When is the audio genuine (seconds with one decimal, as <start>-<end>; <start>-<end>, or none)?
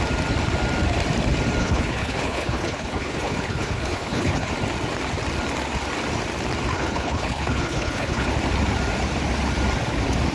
0.0-1.6; 4.5-6.7; 8.3-10.3